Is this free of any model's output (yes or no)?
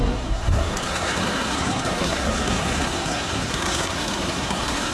no